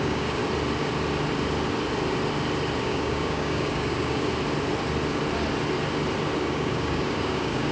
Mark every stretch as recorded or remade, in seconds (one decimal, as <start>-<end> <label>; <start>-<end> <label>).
0.0-0.4 remade; 0.4-2.8 recorded; 2.8-4.3 remade; 4.3-6.4 recorded; 6.4-7.7 remade